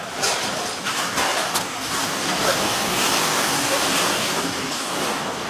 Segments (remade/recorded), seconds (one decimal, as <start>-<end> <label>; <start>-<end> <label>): 0.0-0.8 recorded; 0.8-5.5 remade